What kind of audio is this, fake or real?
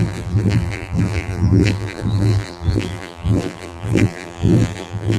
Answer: fake